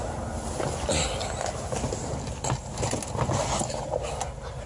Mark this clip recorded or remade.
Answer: recorded